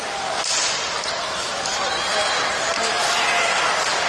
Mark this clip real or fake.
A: fake